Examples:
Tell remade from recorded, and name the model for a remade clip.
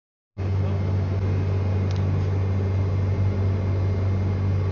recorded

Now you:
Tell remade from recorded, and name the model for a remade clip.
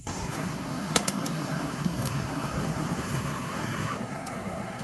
remade, codec, SNAC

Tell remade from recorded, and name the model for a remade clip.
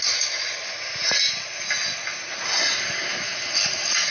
recorded